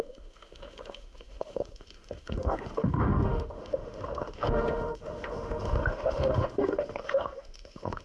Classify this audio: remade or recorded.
remade